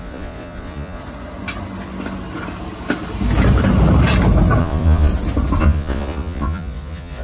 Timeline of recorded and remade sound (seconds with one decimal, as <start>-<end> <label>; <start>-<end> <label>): 0.0-1.0 remade; 1.0-4.6 recorded; 4.6-5.1 remade; 5.1-5.6 recorded; 5.6-7.2 remade